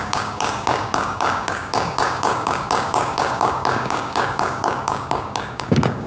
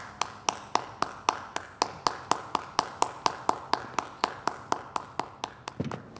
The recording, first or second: second